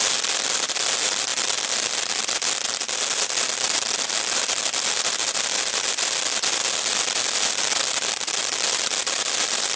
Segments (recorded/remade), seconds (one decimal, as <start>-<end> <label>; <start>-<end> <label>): 0.0-9.8 recorded